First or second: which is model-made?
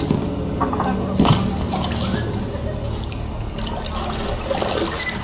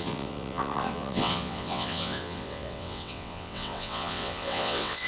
second